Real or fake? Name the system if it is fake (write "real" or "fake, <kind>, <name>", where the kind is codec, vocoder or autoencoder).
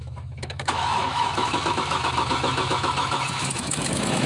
fake, autoencoder, DAC-VAE